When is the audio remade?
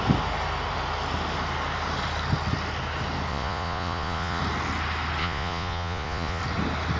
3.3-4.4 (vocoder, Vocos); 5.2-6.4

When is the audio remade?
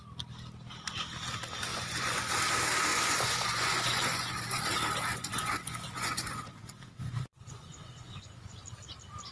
1.7-2.3 (vocoder, Vocos); 2.9-4.6; 5.1-8.6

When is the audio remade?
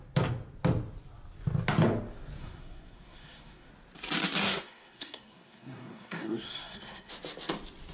2.4-3.7 (codec, SNAC); 4.4-7.1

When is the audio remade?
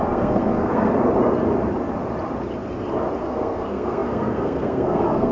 0.0-0.9 (codec, SNAC); 3.2-5.3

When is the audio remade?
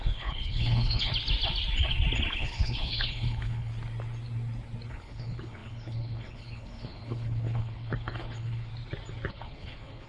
0.0-1.1 (codec, HILCodec); 2.3-3.7; 4.9-8.7; 9.3-10.1